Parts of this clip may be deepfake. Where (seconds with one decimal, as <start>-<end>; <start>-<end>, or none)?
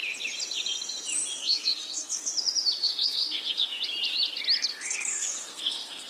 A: 1.4-2.3; 2.8-3.8; 4.7-6.1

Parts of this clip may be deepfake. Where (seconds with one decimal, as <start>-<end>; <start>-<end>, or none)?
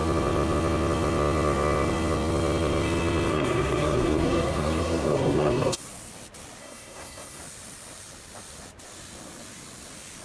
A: 3.3-5.8; 6.6-7.4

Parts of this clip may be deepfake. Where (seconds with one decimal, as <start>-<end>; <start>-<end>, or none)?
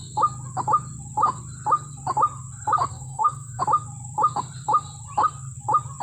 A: 2.9-3.6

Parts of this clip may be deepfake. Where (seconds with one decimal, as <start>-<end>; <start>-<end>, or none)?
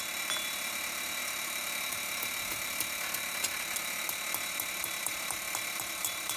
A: none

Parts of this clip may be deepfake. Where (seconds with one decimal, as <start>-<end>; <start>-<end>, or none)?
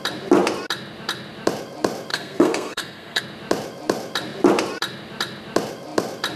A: 2.1-3.2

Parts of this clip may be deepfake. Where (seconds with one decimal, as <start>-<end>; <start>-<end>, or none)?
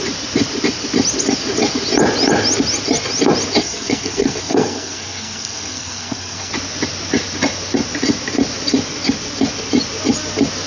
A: 3.6-6.5